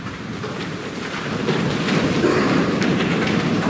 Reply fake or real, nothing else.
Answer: fake